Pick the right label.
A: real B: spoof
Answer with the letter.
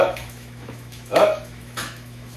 B